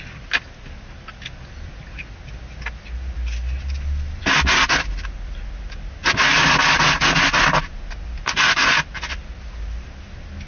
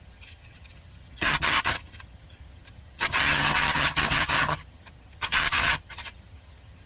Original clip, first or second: first